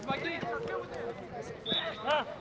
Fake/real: real